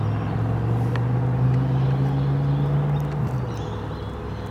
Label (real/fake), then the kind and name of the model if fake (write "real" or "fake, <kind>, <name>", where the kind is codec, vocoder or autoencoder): real